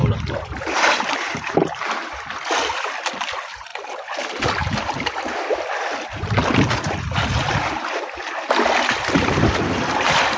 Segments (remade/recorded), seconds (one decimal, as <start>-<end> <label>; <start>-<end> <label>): 0.0-1.9 remade; 1.9-10.4 recorded